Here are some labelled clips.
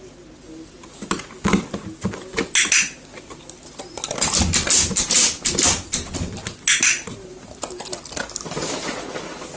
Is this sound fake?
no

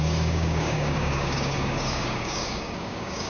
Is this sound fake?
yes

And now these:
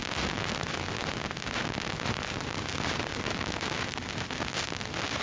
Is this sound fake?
no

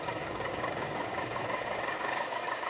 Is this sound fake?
yes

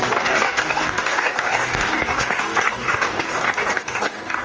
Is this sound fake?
yes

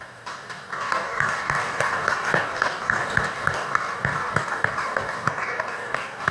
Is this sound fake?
yes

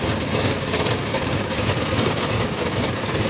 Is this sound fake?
yes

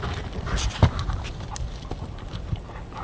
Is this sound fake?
no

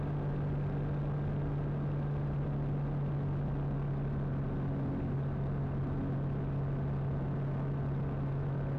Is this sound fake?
no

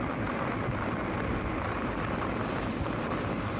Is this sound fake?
no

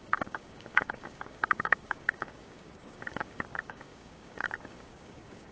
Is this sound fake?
yes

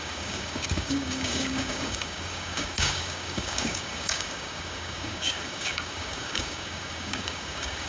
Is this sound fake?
yes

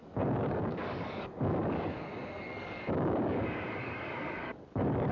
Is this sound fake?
yes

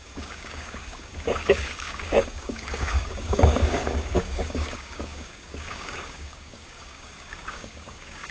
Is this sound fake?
yes